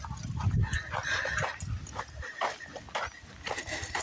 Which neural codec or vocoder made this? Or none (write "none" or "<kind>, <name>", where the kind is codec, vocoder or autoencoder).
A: none